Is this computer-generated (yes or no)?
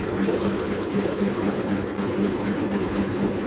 yes